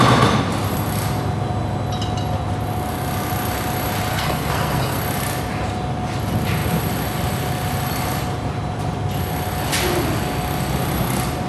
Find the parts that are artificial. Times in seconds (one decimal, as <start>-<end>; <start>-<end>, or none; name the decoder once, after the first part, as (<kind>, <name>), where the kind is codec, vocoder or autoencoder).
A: 4.1-5.0 (codec, SNAC)